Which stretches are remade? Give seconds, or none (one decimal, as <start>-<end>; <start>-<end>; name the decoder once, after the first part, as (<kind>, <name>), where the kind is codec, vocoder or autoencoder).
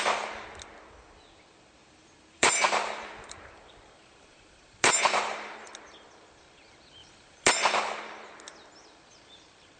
1.8-5.7 (vocoder, BigVGAN v2); 7.0-7.5